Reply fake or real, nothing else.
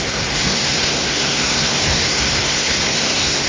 fake